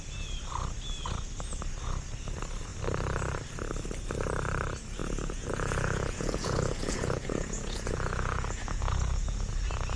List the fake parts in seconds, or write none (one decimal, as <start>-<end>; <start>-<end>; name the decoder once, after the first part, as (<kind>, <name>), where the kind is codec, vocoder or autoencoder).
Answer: 5.0-9.5 (vocoder, Vocos)

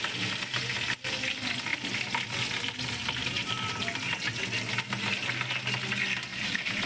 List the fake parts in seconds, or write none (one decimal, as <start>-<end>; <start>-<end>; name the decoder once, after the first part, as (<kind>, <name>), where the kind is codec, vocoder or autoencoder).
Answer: 6.3-6.9 (vocoder, BigVGAN v2)

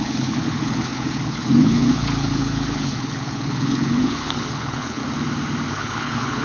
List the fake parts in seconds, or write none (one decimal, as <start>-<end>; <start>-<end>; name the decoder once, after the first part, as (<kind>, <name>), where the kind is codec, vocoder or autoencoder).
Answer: 0.0-5.0 (codec, HILCodec); 5.7-6.4

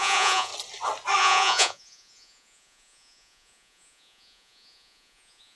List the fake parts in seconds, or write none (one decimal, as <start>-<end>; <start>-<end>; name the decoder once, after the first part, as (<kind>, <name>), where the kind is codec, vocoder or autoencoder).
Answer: 0.0-0.5 (vocoder, Vocos); 1.2-5.6

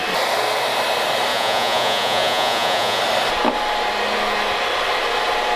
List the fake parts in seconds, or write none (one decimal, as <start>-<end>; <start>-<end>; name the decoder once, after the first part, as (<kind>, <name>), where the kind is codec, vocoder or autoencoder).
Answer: 1.3-3.0 (vocoder, Vocos)

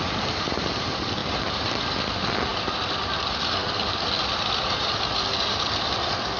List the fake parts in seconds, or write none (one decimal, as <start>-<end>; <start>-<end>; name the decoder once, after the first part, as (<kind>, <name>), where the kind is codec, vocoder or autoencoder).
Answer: 1.2-1.8 (vocoder, BigVGAN v2)

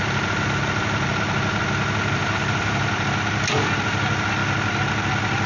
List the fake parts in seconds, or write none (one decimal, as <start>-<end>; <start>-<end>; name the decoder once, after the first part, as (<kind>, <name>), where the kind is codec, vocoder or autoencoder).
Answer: 2.2-2.9 (vocoder, BigVGAN v2)